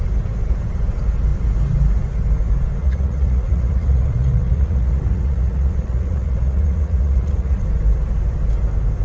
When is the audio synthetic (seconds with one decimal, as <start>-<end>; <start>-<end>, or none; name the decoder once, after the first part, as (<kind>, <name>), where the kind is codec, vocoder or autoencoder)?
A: 2.8-7.6 (vocoder, Vocos)